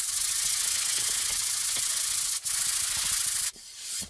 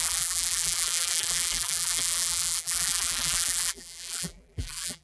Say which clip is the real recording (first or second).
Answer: first